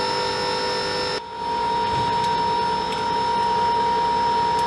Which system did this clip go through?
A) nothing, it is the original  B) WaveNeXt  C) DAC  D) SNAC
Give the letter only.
A